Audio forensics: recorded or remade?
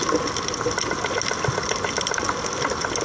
recorded